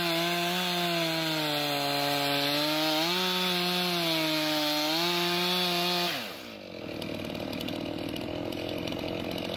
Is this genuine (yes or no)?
yes